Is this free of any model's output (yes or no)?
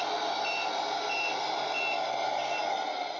yes